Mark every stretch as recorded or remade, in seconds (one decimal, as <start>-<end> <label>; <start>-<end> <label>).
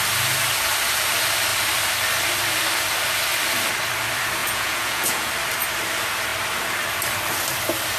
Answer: 0.0-4.4 recorded; 4.4-5.3 remade; 5.3-8.0 recorded